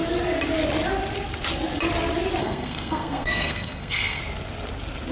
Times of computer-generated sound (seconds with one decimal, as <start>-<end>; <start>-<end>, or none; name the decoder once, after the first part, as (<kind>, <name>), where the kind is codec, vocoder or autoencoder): 2.4-4.2 (codec, SNAC)